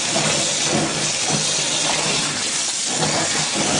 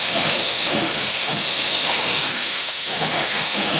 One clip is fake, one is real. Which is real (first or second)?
first